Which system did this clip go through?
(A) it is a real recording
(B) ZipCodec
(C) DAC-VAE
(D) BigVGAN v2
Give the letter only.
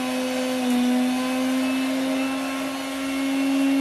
A